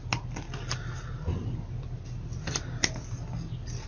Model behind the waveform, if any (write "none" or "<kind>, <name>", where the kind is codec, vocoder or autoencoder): none